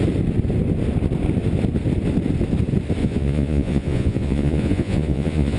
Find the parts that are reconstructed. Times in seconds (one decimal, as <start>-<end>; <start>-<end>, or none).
3.0-5.6